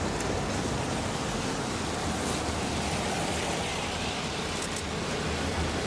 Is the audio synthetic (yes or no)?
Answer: no